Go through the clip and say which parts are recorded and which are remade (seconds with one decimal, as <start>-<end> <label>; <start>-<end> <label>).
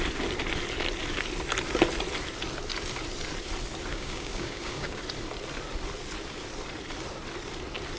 0.0-3.9 recorded; 3.9-5.0 remade; 5.0-8.0 recorded